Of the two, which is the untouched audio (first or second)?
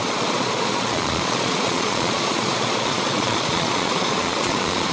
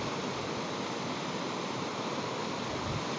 second